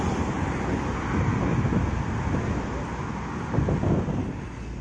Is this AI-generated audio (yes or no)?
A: no